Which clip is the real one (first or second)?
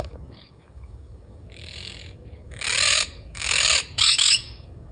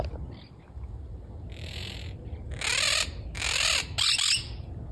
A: second